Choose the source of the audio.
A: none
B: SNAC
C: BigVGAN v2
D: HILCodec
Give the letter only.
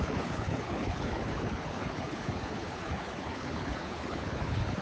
D